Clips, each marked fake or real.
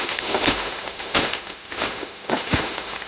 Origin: fake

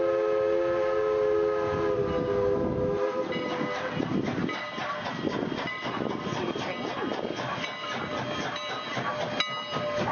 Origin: real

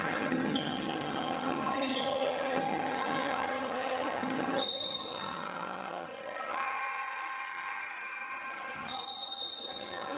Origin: fake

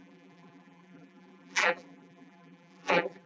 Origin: fake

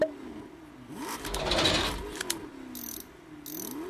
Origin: real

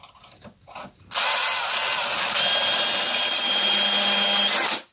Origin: real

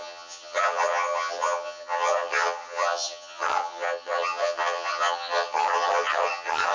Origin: fake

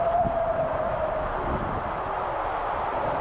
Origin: fake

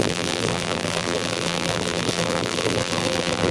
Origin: fake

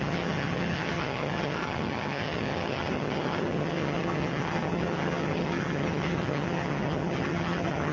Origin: fake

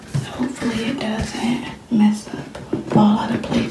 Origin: real